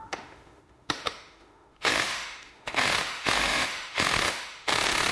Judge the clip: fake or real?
fake